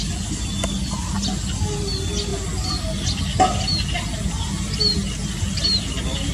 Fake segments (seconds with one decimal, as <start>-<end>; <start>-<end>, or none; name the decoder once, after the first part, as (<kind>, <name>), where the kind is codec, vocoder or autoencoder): none